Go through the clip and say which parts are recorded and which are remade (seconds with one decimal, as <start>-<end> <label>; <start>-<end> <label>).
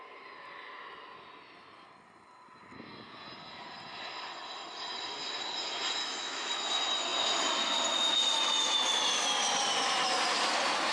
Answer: 0.0-6.0 recorded; 6.0-6.6 remade; 6.6-10.9 recorded